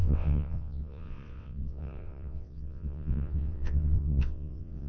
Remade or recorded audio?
remade